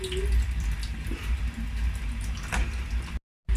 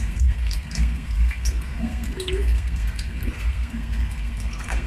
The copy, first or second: second